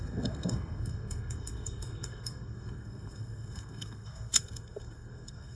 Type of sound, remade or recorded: remade